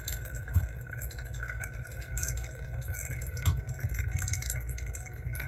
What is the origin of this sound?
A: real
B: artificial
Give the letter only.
B